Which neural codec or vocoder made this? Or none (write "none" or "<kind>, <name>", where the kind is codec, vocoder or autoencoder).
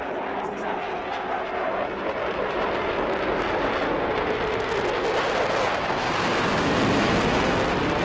none